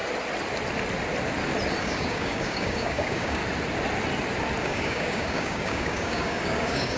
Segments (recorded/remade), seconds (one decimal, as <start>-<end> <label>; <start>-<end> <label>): 0.0-1.8 recorded; 1.8-3.4 remade; 3.4-4.6 recorded; 4.6-7.0 remade